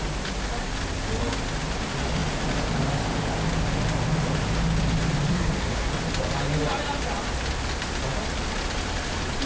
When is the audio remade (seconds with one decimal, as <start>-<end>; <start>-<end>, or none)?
5.3-5.9